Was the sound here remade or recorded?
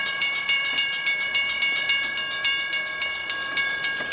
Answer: recorded